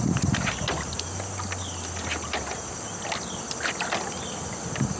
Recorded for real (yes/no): yes